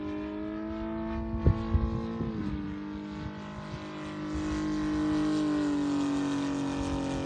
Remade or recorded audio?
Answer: recorded